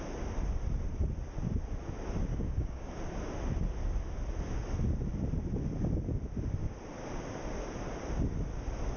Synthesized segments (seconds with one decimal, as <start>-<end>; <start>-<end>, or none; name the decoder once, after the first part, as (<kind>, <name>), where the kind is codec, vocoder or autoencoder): 2.3-2.9 (codec, DAC)